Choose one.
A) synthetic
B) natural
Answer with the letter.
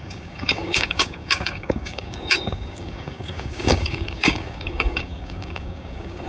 A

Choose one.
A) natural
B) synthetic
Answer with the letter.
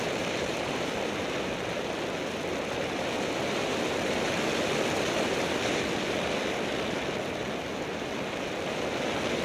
A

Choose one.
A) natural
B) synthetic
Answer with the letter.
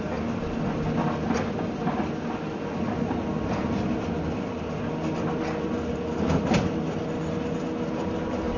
A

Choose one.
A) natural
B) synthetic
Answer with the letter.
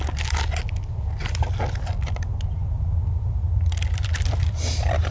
A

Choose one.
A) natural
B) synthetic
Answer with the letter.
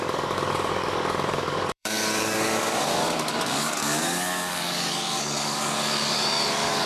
B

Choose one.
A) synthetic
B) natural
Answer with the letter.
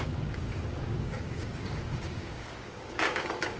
A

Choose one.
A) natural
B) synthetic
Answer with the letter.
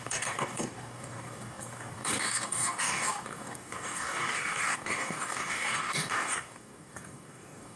B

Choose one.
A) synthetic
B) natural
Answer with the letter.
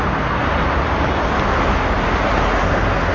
B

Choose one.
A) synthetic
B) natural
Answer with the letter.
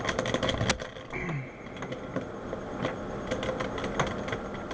B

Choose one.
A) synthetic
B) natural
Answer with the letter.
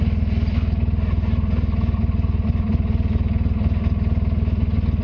B